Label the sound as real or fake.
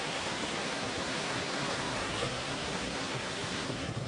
fake